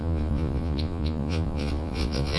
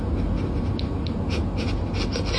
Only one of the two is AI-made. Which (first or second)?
first